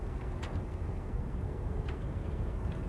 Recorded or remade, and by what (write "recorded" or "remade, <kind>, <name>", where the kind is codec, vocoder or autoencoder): remade, codec, SNAC